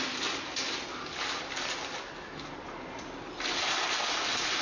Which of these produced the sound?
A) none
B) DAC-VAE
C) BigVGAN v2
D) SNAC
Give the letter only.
A